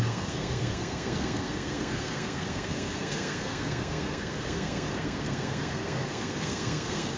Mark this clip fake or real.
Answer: fake